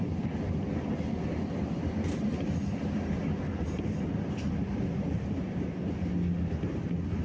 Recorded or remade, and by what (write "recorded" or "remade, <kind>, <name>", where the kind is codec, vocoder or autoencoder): recorded